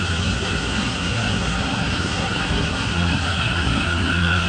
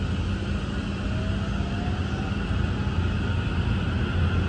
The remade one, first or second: first